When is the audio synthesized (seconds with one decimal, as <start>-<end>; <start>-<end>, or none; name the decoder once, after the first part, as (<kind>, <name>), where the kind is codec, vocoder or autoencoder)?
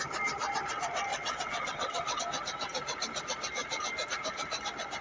1.1-2.2 (vocoder, WaveNeXt)